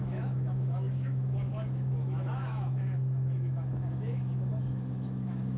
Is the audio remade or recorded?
remade